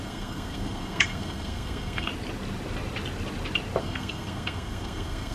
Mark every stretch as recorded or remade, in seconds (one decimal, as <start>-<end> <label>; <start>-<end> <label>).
0.0-2.1 remade; 2.1-3.8 recorded; 3.8-5.3 remade